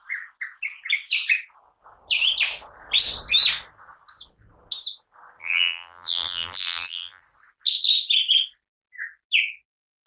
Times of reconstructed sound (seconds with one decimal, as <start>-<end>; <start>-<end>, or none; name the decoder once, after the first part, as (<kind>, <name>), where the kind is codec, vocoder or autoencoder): 5.4-7.2 (vocoder, BigVGAN v2)